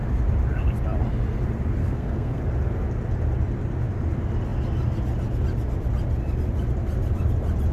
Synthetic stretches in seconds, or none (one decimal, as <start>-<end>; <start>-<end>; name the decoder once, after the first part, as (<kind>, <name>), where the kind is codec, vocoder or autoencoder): 1.8-2.4 (codec, SNAC)